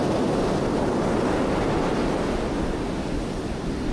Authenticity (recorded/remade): recorded